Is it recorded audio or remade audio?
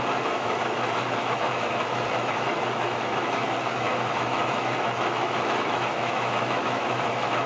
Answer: remade